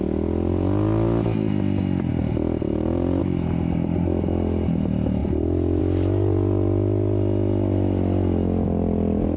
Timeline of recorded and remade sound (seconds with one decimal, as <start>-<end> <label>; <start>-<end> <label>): 0.0-2.1 recorded; 2.1-3.2 remade; 3.2-9.4 recorded